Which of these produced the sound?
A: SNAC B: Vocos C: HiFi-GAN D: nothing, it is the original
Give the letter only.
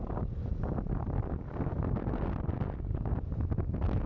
D